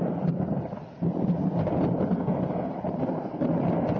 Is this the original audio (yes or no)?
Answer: yes